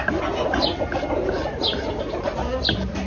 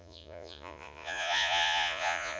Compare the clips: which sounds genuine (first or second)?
first